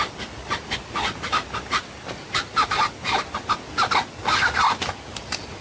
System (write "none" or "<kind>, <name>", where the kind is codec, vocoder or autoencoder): none